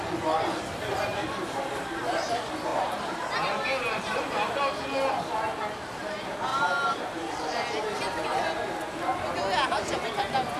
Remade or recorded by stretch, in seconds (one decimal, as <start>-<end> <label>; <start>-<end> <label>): 0.0-1.1 recorded; 1.1-2.0 remade; 2.0-2.7 recorded; 2.7-3.2 remade; 3.2-6.5 recorded; 6.5-7.3 remade; 7.3-10.6 recorded